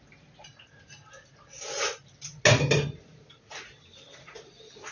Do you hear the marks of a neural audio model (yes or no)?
no